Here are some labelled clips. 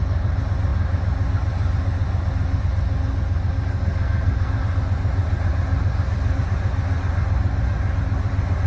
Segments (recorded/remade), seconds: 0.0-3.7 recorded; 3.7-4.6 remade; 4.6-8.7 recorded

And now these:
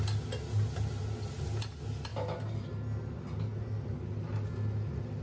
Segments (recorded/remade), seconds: 0.0-5.2 recorded

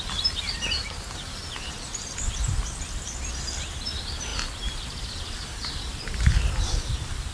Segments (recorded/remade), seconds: 0.0-7.3 recorded

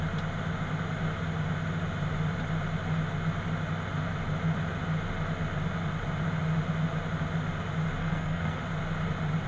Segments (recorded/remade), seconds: 0.0-8.0 recorded; 8.0-8.6 remade; 8.6-9.5 recorded